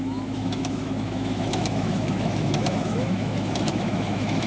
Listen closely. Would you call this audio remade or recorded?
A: remade